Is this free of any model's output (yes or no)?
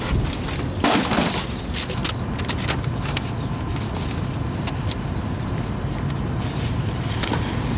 yes